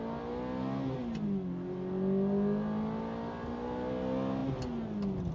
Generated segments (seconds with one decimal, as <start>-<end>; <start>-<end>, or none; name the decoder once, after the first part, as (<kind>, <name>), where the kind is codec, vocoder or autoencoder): none